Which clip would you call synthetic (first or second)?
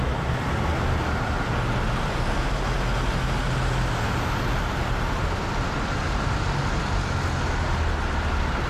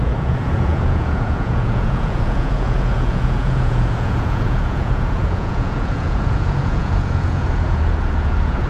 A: second